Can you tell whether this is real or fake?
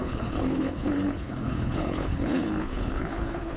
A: fake